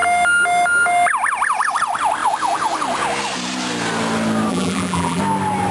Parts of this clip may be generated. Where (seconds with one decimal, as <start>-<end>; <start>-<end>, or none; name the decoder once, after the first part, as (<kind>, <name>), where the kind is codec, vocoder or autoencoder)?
4.5-5.2 (vocoder, BigVGAN v2)